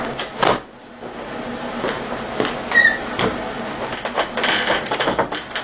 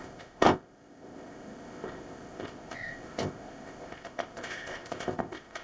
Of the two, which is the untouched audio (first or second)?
first